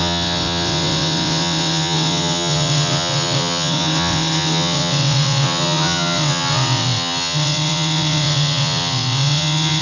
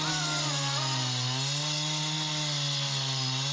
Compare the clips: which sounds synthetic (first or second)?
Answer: first